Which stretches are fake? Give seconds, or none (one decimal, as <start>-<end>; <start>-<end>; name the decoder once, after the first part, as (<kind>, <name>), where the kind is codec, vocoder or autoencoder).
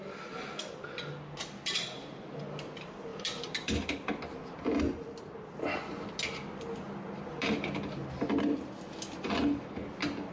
none